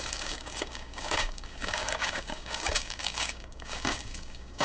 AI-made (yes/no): yes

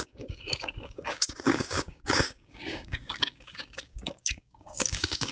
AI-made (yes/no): yes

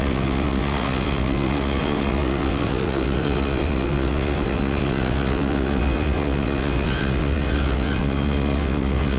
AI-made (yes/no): yes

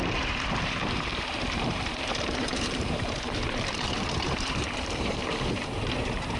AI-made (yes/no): yes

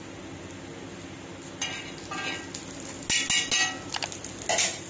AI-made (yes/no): no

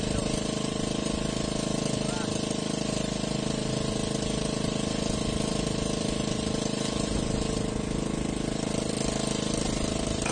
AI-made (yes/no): no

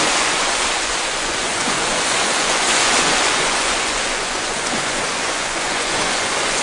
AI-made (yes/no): yes